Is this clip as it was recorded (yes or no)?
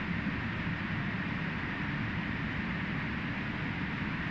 yes